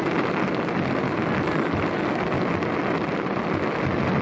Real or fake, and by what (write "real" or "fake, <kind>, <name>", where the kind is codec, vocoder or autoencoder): real